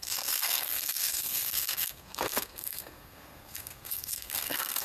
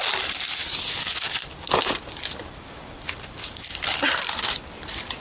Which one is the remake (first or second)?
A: first